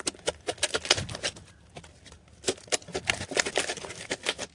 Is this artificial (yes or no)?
no